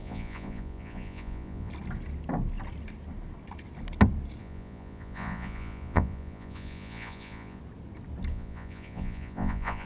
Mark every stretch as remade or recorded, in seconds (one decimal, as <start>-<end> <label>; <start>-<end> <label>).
0.0-1.7 remade; 1.7-4.4 recorded; 4.4-7.6 remade; 7.6-8.3 recorded; 8.3-9.9 remade